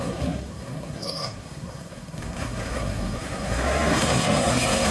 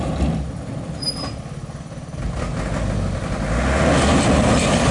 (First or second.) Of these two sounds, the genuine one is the second